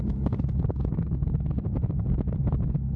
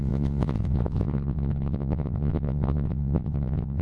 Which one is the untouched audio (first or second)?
first